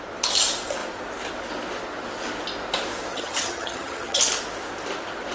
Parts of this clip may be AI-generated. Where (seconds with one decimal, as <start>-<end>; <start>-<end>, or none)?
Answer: 3.1-4.2